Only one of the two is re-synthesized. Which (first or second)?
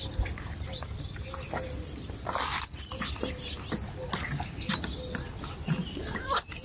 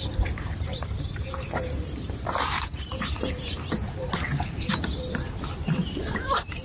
second